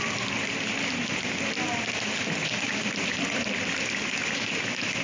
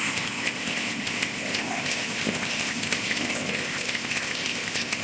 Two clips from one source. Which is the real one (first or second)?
first